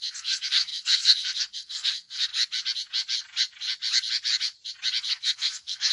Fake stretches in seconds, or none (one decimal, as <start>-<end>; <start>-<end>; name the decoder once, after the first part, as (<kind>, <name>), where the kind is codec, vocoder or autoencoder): 0.0-2.3 (codec, SNAC); 5.1-5.9

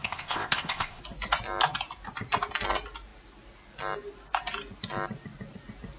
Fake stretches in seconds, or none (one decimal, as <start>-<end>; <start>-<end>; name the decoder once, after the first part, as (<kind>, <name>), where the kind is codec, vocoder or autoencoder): 0.0-1.0 (codec, ZipCodec)

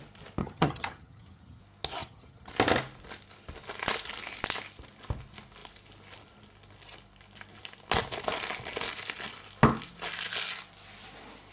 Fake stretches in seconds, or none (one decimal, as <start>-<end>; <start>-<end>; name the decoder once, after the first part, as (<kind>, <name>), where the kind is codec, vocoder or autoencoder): 0.4-1.6 (vocoder, HiFi-GAN); 2.0-2.5

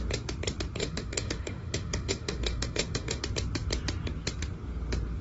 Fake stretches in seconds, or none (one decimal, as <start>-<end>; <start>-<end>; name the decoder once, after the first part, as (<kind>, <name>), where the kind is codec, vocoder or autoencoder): 0.8-3.2 (autoencoder, DAC-VAE)

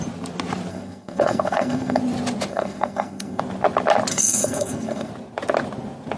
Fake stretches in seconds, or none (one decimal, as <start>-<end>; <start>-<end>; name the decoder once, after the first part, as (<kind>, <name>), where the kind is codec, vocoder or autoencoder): 0.7-2.0 (codec, SNAC); 2.5-3.4; 4.1-5.1

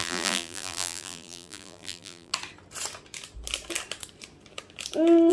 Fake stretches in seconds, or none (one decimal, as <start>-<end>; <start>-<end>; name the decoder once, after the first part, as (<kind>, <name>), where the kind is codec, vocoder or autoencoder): 0.0-2.3 (vocoder, BigVGAN v2)

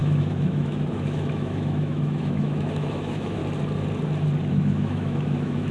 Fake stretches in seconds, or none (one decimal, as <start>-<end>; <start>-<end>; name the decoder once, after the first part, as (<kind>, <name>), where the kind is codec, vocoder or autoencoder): 0.0-3.4 (autoencoder, DAC-VAE); 4.5-5.7

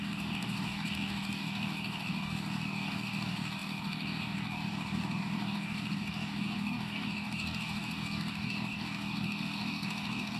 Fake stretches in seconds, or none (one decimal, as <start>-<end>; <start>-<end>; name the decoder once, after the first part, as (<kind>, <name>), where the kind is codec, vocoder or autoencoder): 0.0-10.4 (codec, DAC)